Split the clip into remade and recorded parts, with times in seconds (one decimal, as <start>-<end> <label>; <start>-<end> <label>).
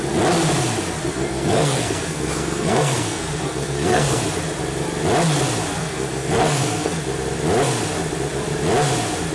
0.0-1.1 recorded; 1.1-4.2 remade; 4.2-5.8 recorded; 5.8-7.0 remade; 7.0-9.3 recorded